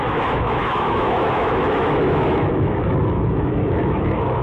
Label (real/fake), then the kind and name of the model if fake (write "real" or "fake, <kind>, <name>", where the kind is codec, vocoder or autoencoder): fake, autoencoder, DAC-VAE